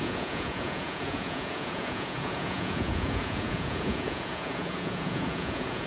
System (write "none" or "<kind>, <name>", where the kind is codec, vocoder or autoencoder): vocoder, Vocos